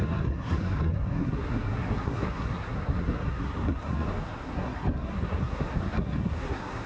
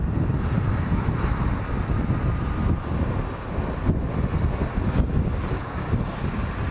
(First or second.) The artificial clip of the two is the first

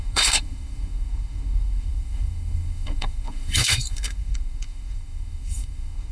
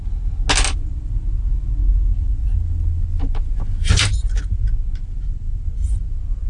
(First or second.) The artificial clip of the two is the first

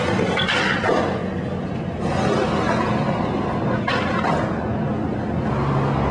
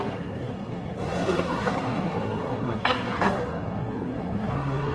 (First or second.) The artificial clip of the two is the second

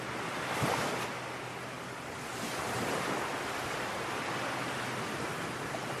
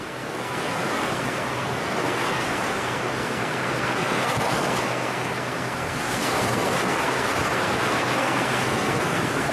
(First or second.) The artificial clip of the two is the second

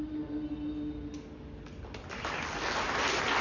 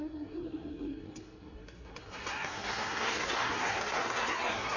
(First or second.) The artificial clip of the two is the second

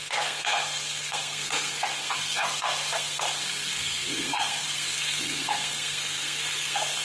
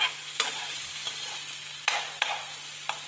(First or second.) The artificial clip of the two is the first